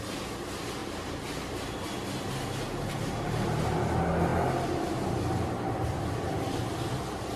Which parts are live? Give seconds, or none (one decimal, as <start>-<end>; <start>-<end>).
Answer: 0.0-7.4